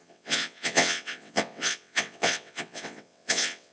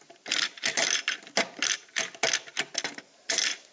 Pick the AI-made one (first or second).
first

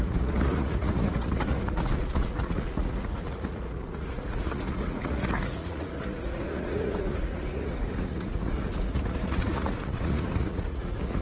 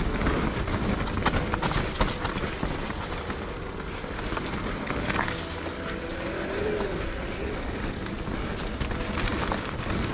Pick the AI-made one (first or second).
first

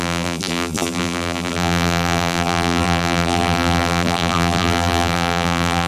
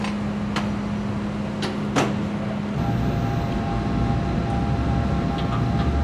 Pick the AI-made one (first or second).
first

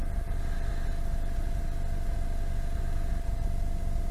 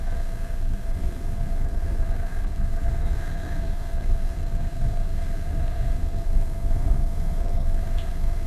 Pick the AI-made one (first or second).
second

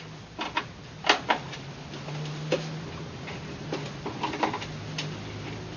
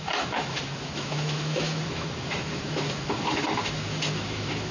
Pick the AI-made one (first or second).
second